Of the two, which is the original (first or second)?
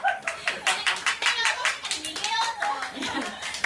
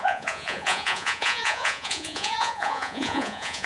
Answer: first